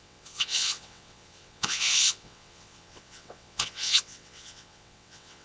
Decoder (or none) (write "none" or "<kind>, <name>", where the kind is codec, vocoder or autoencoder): vocoder, WaveNeXt